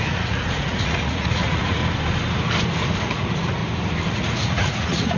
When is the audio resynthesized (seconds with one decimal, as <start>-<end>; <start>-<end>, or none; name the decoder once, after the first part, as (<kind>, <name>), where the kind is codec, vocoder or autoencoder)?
0.0-1.8 (vocoder, Vocos); 3.0-3.6; 4.1-5.2